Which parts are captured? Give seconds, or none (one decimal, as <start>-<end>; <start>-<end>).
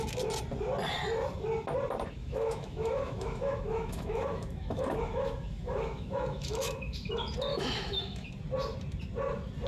0.0-2.2; 7.1-7.5; 8.3-9.7